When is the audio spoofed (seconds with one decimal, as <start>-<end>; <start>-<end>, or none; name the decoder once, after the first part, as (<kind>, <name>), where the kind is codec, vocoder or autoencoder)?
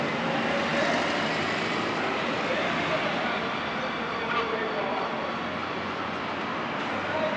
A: 5.6-6.2 (vocoder, Vocos)